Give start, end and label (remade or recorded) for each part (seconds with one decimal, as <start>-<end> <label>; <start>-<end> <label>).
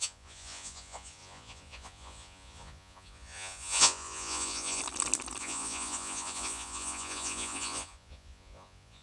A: 0.0-4.8 remade; 4.8-5.4 recorded; 5.4-9.0 remade